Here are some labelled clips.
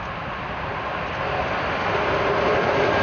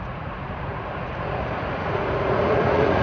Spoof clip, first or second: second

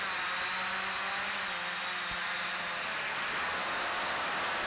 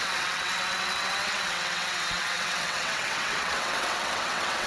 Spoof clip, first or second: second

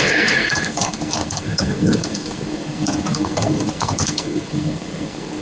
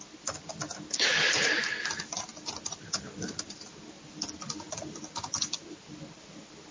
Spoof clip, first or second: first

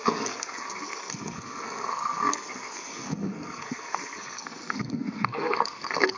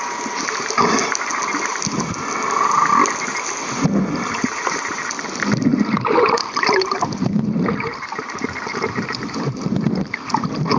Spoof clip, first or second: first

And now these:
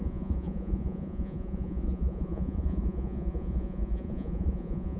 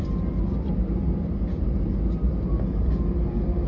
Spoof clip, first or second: first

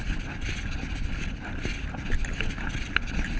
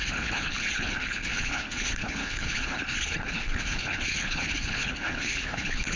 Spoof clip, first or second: second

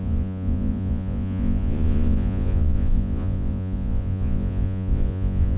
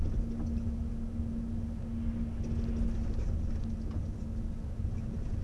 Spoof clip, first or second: first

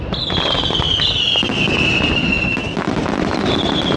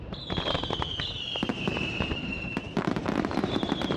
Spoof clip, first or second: second